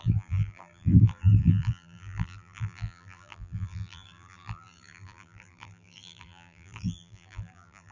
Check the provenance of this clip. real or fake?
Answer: fake